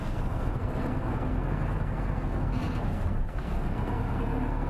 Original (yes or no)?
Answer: no